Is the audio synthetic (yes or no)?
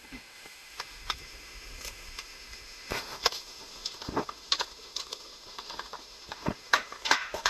yes